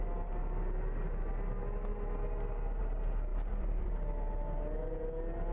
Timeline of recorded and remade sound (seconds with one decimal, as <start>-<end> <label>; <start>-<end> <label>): 0.0-3.3 recorded; 3.3-3.9 remade; 3.9-5.5 recorded